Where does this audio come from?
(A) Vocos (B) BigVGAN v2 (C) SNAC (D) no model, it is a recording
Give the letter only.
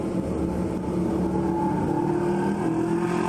D